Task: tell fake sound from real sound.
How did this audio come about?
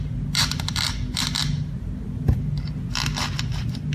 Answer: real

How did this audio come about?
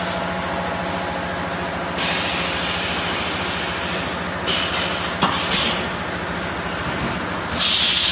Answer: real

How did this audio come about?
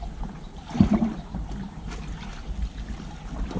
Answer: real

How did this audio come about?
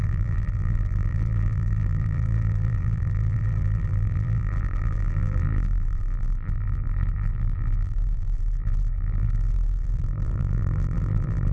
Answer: fake